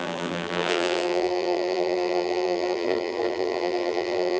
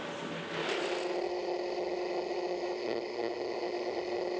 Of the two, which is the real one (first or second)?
second